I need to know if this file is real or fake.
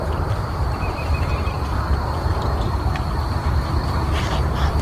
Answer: fake